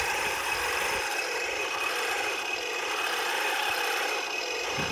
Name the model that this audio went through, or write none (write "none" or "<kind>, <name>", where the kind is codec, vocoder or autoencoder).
vocoder, BigVGAN v2